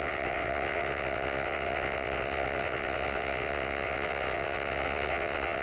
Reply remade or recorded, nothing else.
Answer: remade